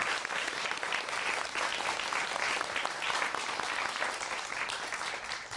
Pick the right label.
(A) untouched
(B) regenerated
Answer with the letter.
A